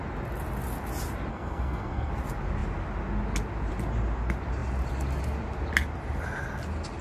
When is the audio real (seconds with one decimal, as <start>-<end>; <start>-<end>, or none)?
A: 0.0-1.3; 2.1-7.0